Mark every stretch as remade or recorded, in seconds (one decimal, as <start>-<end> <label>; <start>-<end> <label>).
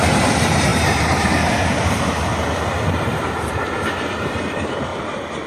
0.0-2.3 remade; 2.3-2.9 recorded; 2.9-4.9 remade; 4.9-5.5 recorded